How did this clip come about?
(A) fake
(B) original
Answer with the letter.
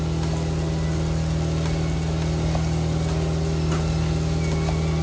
B